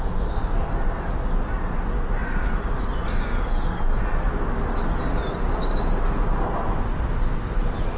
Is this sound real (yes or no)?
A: yes